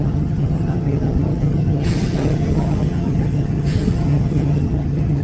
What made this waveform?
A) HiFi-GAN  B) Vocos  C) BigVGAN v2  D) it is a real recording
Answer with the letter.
A